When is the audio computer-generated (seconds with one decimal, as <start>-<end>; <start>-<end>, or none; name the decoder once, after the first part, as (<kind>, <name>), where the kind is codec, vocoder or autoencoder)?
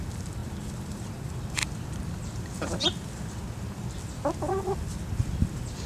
0.0-1.6 (vocoder, BigVGAN v2); 4.6-5.9